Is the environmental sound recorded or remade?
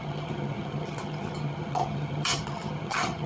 remade